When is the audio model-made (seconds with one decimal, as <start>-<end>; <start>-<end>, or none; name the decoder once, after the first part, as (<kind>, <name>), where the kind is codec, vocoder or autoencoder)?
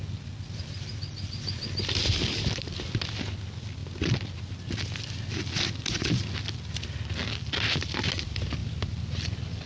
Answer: none